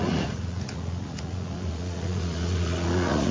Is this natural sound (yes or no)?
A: no